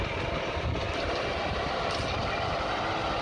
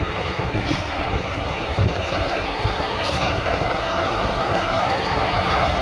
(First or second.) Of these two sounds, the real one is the first